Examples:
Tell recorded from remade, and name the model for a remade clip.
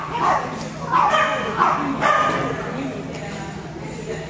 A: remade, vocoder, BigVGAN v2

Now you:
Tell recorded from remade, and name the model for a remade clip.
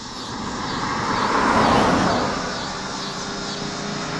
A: recorded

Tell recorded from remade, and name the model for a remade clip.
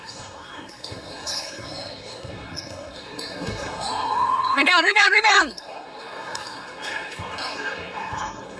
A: remade, codec, SNAC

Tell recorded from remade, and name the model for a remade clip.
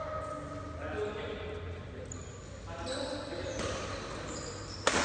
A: recorded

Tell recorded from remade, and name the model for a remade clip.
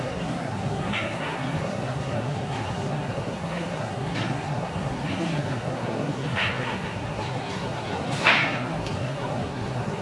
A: remade, codec, SNAC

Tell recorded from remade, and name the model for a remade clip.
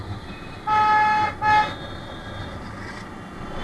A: recorded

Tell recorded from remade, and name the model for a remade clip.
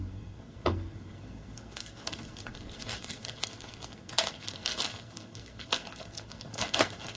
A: remade, codec, SNAC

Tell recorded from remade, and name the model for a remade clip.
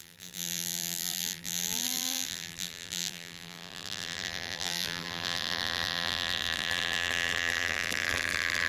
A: remade, vocoder, BigVGAN v2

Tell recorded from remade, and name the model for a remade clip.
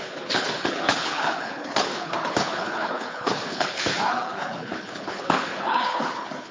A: remade, codec, HILCodec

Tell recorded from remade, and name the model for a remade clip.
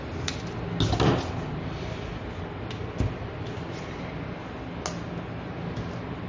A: recorded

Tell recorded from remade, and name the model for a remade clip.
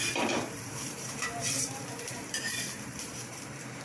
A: remade, vocoder, BigVGAN v2